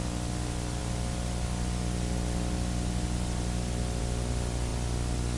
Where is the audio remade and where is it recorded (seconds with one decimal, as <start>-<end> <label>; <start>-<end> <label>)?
0.0-5.4 recorded